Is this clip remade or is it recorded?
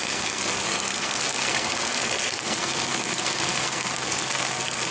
remade